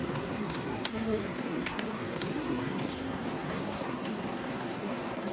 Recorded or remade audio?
remade